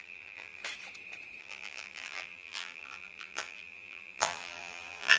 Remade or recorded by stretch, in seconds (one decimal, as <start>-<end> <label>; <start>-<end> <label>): 0.0-0.6 remade; 0.6-1.4 recorded; 1.4-5.2 remade